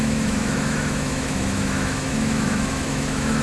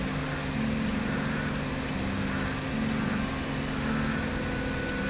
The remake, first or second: first